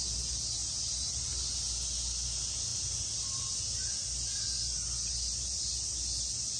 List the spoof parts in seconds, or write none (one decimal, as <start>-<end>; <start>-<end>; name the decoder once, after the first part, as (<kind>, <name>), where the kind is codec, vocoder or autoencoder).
none